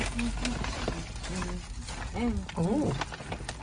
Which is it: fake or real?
real